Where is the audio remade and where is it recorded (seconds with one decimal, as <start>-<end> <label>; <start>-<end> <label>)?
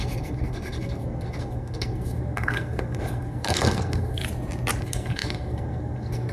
0.0-4.2 remade; 4.2-4.8 recorded; 4.8-6.3 remade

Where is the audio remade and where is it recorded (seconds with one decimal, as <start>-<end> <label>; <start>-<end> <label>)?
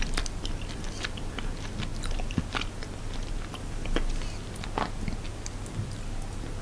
0.0-6.6 recorded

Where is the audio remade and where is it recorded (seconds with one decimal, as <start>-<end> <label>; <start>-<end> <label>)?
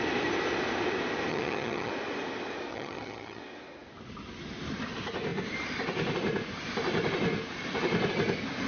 0.0-1.3 recorded; 1.3-1.9 remade; 1.9-2.7 recorded; 2.7-3.4 remade; 3.4-8.7 recorded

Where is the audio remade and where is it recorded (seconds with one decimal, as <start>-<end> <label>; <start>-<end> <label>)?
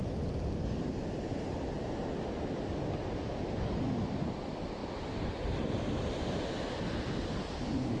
0.0-4.8 recorded; 4.8-6.2 remade; 6.2-8.0 recorded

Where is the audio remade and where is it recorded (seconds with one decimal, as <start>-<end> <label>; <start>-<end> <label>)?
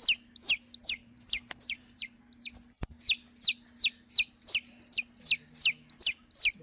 0.0-1.0 recorded; 1.0-2.2 remade; 2.2-6.6 recorded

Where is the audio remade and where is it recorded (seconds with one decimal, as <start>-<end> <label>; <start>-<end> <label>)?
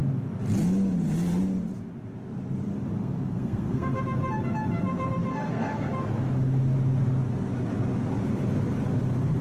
0.0-3.0 recorded; 3.0-4.0 remade; 4.0-5.3 recorded; 5.3-5.9 remade; 5.9-9.4 recorded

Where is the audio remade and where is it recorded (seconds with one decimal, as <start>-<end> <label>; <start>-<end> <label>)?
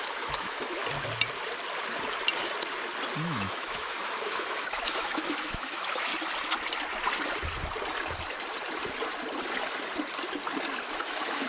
0.0-0.8 remade; 0.8-3.2 recorded; 3.2-6.1 remade; 6.1-10.8 recorded; 10.8-11.5 remade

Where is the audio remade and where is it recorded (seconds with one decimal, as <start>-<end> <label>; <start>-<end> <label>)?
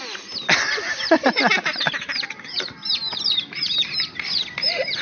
0.0-1.7 recorded; 1.7-5.0 remade